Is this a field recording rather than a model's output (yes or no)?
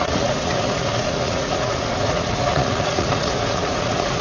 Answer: no